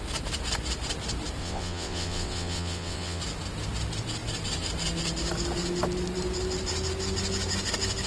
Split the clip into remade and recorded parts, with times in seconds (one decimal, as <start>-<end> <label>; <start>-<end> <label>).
0.0-1.4 recorded; 1.4-3.2 remade; 3.2-8.1 recorded